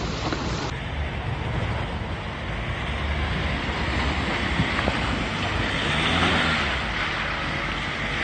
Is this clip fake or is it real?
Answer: real